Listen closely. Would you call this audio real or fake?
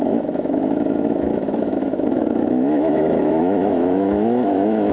fake